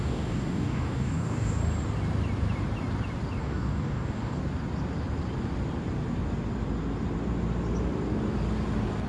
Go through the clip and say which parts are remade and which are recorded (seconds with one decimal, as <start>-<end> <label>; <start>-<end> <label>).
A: 0.0-1.6 remade; 1.6-3.4 recorded; 3.4-4.4 remade; 4.4-9.1 recorded